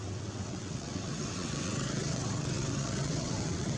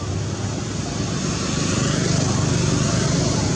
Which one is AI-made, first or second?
first